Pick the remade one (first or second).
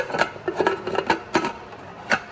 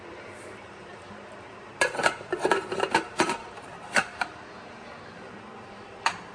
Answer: second